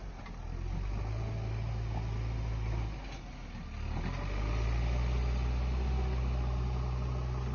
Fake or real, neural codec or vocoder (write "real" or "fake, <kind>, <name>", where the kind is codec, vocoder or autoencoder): real